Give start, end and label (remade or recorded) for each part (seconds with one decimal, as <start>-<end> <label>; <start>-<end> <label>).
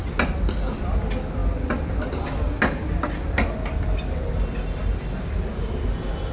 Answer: 0.0-6.3 recorded